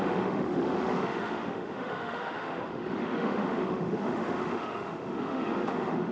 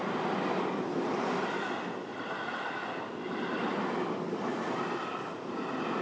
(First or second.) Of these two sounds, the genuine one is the second